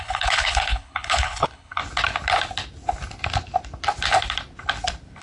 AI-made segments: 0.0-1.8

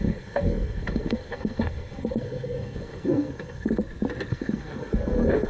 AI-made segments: 0.0-3.8; 4.3-5.5

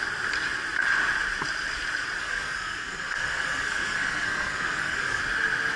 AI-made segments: 2.2-5.2

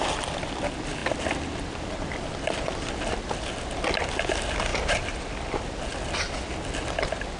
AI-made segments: none